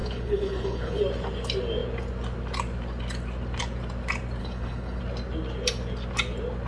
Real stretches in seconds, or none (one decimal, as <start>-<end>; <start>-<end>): 1.0-4.4; 5.0-6.7